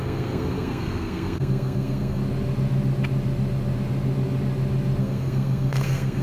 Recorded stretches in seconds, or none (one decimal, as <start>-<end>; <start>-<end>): 2.2-5.0